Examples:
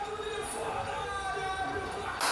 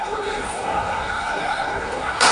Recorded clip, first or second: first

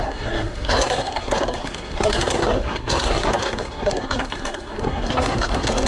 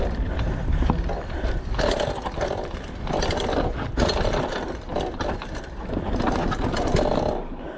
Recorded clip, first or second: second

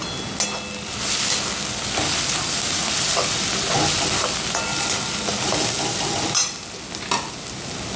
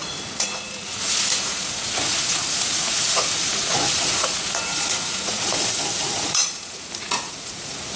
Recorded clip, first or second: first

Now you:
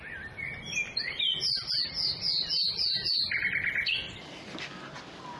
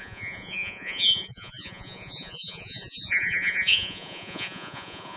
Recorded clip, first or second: first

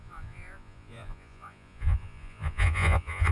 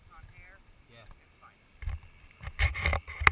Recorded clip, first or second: second